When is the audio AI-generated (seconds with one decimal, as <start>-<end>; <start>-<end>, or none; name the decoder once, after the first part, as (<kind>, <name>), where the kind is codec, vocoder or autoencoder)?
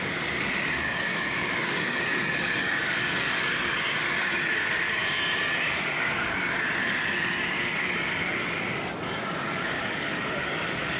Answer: 0.0-5.0 (codec, DAC); 5.6-11.0